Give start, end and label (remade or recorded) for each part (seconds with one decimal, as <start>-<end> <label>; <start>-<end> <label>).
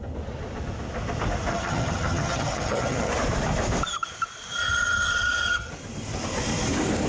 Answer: 0.0-1.5 recorded; 1.5-3.1 remade; 3.1-4.6 recorded; 4.6-5.7 remade; 5.7-7.1 recorded